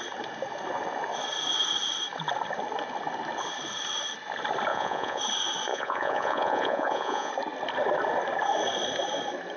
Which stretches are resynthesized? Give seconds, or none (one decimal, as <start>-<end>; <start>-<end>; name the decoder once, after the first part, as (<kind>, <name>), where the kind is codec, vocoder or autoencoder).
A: 4.7-5.2 (vocoder, Vocos); 5.7-7.3